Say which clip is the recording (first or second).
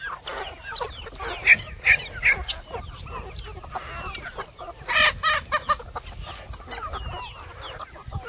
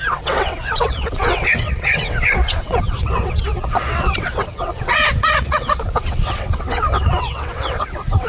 first